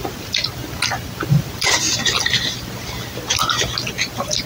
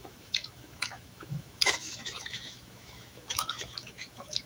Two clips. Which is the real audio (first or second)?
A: first